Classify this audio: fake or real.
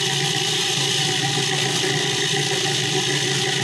real